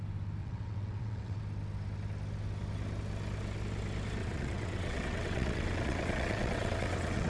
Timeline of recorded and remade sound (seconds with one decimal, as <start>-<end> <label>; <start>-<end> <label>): 0.0-0.4 recorded; 0.4-1.4 remade; 1.4-4.2 recorded; 4.2-7.3 remade